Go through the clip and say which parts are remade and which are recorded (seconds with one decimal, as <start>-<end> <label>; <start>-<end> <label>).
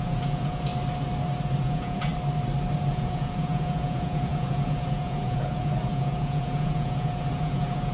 0.0-0.7 remade; 0.7-1.6 recorded; 1.6-2.1 remade; 2.1-2.9 recorded; 2.9-7.9 remade